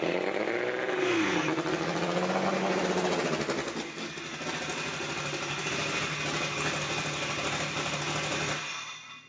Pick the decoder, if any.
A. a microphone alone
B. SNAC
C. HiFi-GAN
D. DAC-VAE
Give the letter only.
A